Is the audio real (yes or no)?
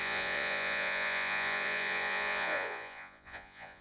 no